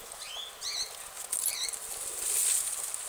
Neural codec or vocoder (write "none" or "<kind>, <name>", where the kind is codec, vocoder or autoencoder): none